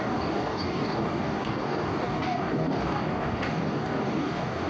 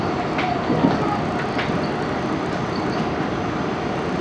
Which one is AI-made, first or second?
first